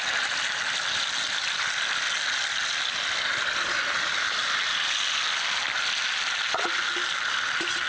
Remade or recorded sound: recorded